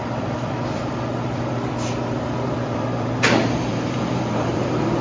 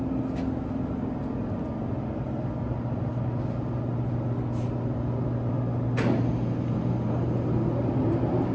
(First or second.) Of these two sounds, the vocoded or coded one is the first